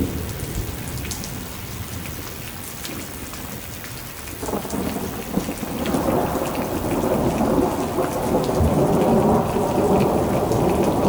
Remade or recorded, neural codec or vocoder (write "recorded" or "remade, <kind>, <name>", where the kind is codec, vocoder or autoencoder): recorded